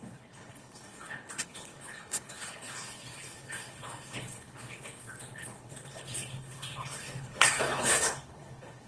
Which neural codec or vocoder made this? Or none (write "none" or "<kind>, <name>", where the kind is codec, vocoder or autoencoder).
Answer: codec, HILCodec